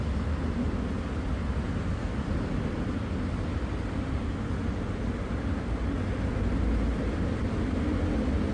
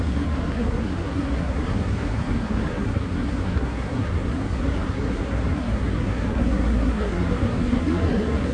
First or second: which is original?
first